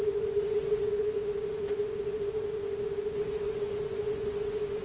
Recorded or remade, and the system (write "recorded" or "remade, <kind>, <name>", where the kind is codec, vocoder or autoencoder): remade, vocoder, Vocos